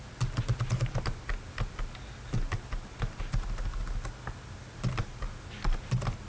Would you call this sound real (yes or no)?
yes